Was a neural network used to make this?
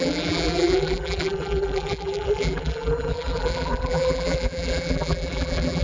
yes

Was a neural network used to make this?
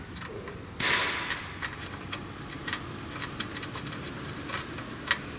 no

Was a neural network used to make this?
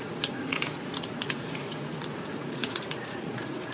yes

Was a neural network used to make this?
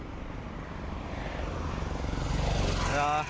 no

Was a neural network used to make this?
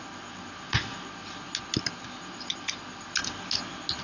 no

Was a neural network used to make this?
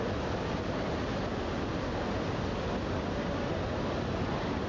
no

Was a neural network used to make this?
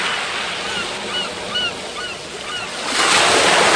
no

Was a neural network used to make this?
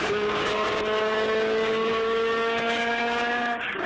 yes